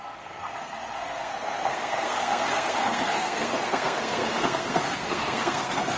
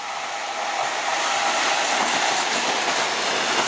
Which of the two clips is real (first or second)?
second